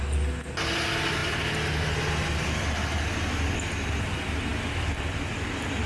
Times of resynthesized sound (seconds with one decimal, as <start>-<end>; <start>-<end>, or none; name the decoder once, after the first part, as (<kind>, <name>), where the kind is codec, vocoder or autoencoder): none